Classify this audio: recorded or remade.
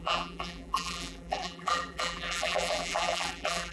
remade